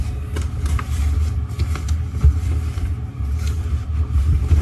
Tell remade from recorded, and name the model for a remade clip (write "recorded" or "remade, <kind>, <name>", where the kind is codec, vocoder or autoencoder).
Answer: recorded